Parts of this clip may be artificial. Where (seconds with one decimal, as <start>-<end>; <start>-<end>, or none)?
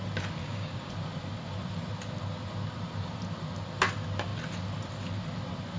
0.4-0.9